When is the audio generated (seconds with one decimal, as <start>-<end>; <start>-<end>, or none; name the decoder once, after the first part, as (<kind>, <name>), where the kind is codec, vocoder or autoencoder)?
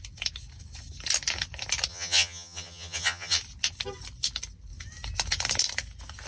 1.9-3.4 (vocoder, HiFi-GAN)